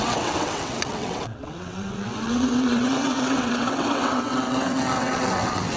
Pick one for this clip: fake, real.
fake